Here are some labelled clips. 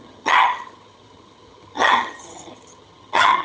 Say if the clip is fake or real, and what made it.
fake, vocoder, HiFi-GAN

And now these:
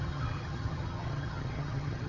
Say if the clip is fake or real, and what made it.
fake, vocoder, HiFi-GAN